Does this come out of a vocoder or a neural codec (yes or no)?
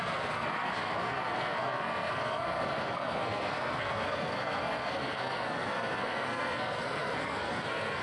yes